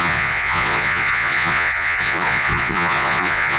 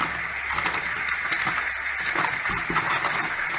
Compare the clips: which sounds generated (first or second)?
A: first